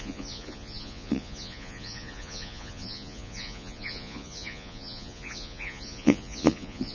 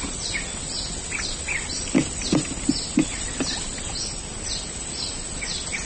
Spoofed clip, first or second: first